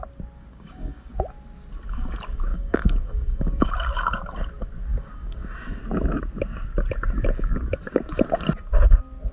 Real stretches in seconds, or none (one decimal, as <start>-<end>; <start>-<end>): 0.0-0.5; 1.1-2.5; 4.2-4.9; 5.8-9.3

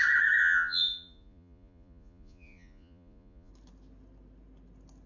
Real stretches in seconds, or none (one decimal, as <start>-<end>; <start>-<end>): 0.0-0.4; 3.5-5.1

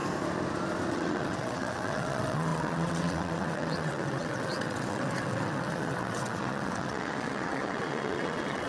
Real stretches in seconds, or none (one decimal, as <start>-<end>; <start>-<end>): 0.0-0.9

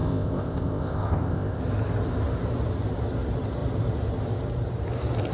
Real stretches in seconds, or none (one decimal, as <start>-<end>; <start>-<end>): 1.6-5.3